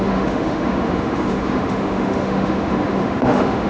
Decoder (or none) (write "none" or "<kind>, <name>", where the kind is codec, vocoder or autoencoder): autoencoder, DAC-VAE